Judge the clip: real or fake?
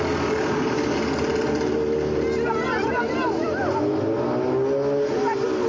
real